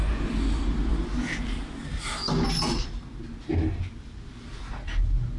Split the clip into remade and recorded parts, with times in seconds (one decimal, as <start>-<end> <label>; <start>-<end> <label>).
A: 0.0-5.4 recorded